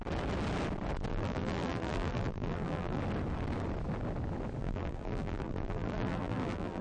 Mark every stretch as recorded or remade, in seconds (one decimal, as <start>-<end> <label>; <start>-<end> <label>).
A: 0.0-1.1 recorded; 1.1-3.0 remade; 3.0-4.6 recorded; 4.6-6.8 remade